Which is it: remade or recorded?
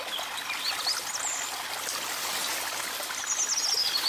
recorded